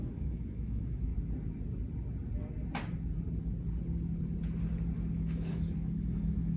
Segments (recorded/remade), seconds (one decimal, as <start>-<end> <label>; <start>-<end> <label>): 0.0-1.1 remade; 1.1-5.1 recorded; 5.1-6.6 remade